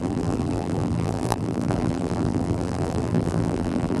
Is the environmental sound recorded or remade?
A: remade